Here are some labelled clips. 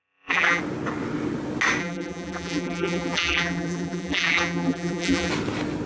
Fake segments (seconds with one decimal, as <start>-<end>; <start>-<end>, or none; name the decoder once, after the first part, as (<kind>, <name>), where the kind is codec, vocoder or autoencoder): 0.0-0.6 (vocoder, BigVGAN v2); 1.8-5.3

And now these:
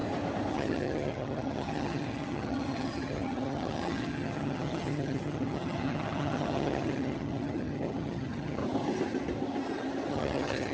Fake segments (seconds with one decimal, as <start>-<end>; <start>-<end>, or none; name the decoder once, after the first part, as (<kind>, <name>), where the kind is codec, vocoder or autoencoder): 0.5-8.6 (vocoder, HiFi-GAN); 10.1-10.7

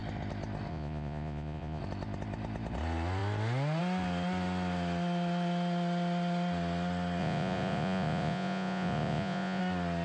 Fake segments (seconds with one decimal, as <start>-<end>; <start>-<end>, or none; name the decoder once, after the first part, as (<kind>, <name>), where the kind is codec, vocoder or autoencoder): 0.7-1.8 (vocoder, Vocos); 7.2-9.6